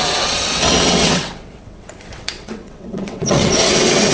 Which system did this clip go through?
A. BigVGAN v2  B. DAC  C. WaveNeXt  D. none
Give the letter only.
C